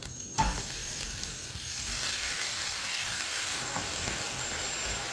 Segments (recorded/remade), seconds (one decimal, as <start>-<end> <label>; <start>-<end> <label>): 0.0-4.4 remade; 4.4-5.1 recorded